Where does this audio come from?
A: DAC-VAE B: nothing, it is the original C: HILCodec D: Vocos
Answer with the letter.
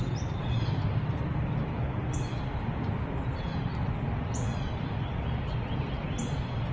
B